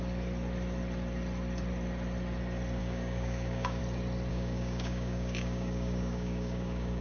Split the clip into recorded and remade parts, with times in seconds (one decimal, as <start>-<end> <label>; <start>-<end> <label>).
0.0-2.8 recorded; 2.8-3.8 remade; 3.8-4.3 recorded; 4.3-7.0 remade

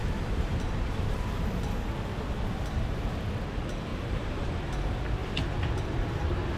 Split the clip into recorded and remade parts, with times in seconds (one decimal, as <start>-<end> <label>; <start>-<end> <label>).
0.0-1.7 remade; 1.7-3.9 recorded; 3.9-4.5 remade; 4.5-6.6 recorded

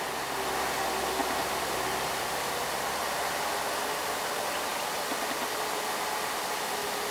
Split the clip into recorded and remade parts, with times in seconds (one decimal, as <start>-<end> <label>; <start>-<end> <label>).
0.0-1.2 recorded; 1.2-3.4 remade; 3.4-7.1 recorded

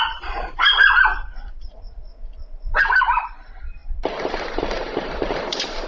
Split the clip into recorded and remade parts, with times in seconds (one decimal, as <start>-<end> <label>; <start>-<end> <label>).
0.0-2.1 remade; 2.1-2.8 recorded; 2.8-5.9 remade

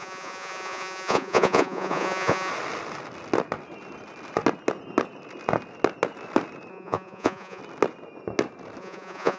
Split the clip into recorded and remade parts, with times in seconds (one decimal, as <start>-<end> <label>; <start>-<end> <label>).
0.0-2.5 remade; 2.5-6.7 recorded; 6.7-7.6 remade; 7.6-8.8 recorded; 8.8-9.4 remade

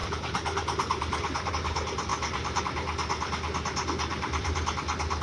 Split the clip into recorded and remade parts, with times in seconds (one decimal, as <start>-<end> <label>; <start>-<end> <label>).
0.0-1.5 remade; 1.5-2.1 recorded; 2.1-2.6 remade; 2.6-4.1 recorded; 4.1-4.7 remade; 4.7-5.2 recorded

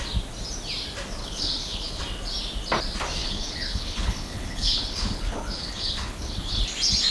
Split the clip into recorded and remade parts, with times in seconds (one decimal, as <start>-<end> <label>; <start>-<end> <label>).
0.0-1.2 recorded; 1.2-2.0 remade; 2.0-3.2 recorded; 3.2-6.6 remade; 6.6-7.1 recorded